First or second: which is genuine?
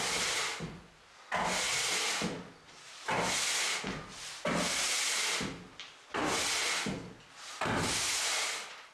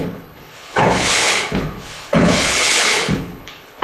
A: first